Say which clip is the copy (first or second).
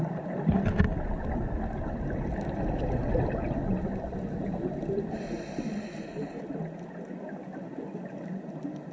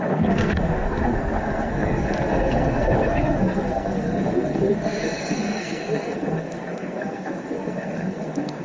second